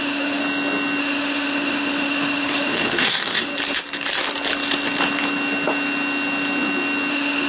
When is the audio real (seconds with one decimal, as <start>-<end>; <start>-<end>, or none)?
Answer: 0.4-1.0; 3.5-7.1

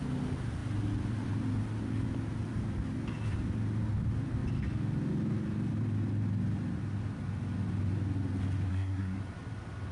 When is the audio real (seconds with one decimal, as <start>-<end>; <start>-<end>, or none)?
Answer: 0.0-8.7; 9.2-9.9

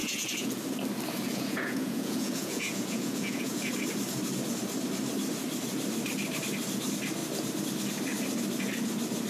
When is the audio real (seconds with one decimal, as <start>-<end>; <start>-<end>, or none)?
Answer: 0.6-1.3; 3.7-9.3

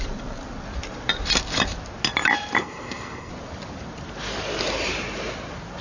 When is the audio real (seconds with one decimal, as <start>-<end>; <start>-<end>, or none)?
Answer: 0.0-2.6; 3.3-5.8

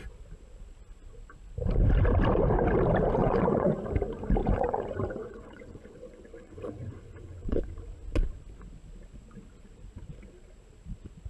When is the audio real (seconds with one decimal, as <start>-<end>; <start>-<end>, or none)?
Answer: 0.0-3.2; 3.9-4.4; 7.7-11.3

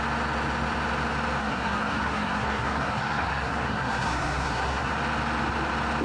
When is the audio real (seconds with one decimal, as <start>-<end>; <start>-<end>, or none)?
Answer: 0.0-1.4; 5.0-6.0

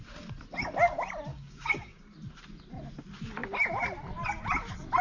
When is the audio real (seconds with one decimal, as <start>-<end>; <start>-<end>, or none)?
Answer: 0.0-1.3; 2.0-5.0